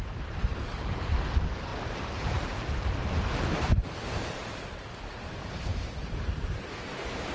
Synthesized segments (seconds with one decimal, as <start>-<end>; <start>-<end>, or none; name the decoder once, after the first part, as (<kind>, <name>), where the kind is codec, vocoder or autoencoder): 0.0-7.3 (vocoder, BigVGAN v2)